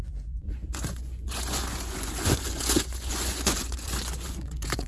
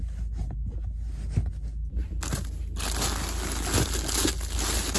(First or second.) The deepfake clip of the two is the first